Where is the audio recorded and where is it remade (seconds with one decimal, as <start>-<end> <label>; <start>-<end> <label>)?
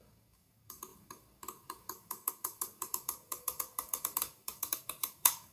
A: 0.0-5.5 remade